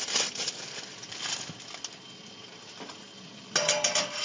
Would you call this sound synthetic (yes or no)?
no